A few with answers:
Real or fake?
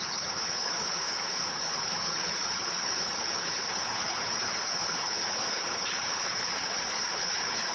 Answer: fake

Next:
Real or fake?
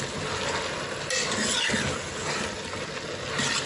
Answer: real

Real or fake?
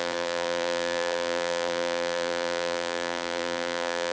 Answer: fake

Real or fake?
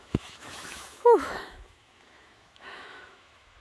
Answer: fake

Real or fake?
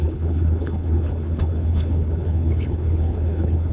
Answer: fake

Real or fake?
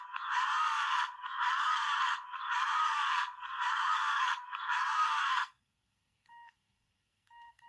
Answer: fake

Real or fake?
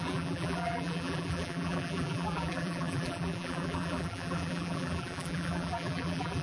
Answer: fake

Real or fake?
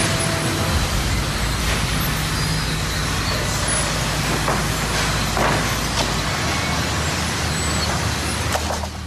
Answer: real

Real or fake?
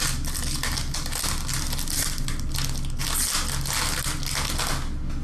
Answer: real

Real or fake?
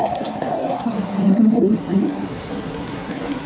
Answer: fake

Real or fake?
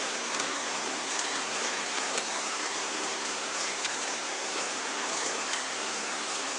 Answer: fake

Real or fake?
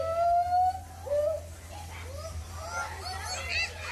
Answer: real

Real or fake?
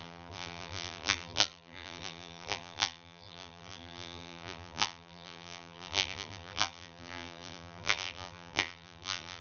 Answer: fake